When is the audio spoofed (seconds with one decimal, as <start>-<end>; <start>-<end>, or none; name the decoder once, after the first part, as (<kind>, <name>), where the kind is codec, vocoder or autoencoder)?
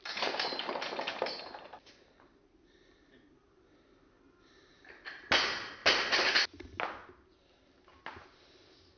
none